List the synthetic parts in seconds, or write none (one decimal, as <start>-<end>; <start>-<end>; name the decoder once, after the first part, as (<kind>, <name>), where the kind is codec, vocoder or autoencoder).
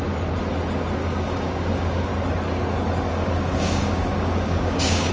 1.0-2.1 (codec, DAC); 3.1-5.1